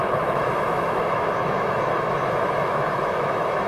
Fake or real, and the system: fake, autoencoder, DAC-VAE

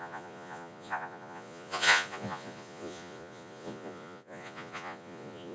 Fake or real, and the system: fake, vocoder, Vocos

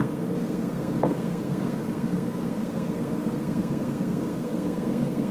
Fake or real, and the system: fake, codec, SNAC